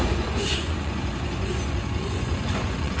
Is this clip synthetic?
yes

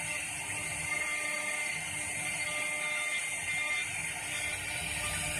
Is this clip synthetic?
no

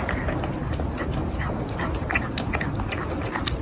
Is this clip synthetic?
no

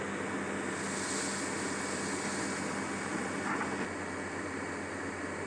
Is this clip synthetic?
no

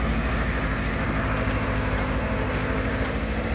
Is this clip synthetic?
no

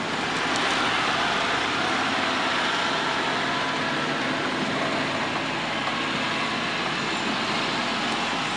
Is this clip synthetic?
no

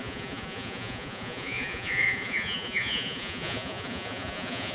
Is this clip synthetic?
yes